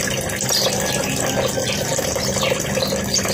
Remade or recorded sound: recorded